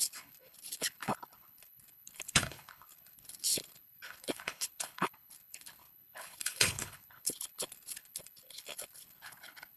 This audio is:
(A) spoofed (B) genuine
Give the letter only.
A